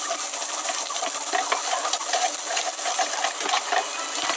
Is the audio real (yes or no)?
yes